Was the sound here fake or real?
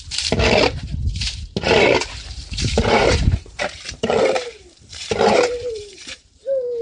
fake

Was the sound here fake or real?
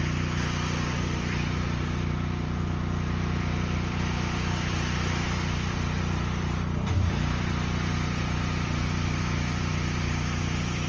fake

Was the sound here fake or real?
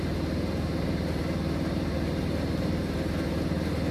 real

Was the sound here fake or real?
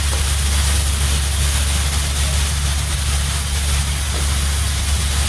real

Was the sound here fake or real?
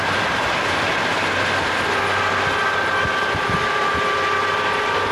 real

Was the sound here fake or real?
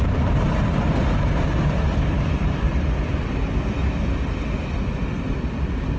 fake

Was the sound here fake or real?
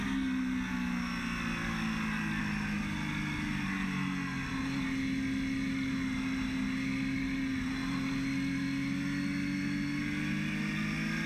real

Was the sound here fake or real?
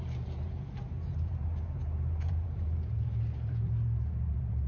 fake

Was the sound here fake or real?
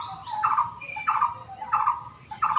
real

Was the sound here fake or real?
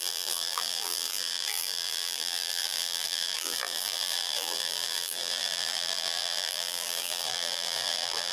fake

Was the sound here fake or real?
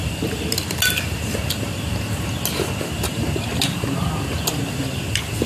real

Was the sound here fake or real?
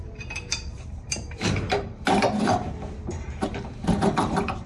fake